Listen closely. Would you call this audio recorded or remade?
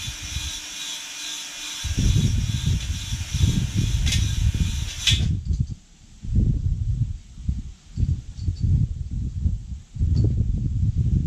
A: recorded